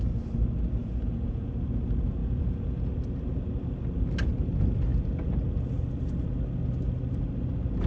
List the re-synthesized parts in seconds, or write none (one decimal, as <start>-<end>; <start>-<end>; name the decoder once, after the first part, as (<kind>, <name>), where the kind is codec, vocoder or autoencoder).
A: 0.8-1.5 (vocoder, Vocos); 2.2-2.9